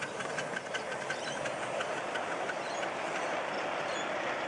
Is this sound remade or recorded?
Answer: recorded